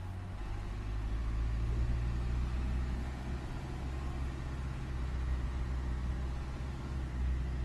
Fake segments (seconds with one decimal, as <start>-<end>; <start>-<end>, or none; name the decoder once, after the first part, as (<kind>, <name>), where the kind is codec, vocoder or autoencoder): none